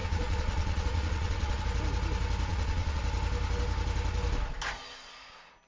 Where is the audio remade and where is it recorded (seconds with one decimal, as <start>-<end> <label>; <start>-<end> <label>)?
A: 0.0-1.6 remade; 1.6-2.5 recorded; 2.5-3.0 remade; 3.0-5.7 recorded